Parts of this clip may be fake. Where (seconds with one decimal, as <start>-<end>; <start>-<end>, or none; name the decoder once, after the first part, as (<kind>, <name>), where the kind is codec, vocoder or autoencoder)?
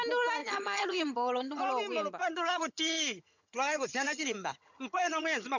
0.4-1.6 (vocoder, HiFi-GAN); 2.2-5.6